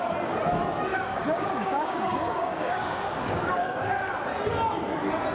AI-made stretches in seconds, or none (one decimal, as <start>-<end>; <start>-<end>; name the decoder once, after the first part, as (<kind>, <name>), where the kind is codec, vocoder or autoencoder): 0.9-4.1 (codec, DAC)